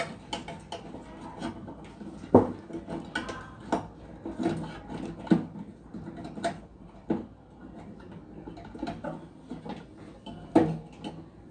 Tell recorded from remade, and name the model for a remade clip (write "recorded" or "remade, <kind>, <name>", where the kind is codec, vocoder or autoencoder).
recorded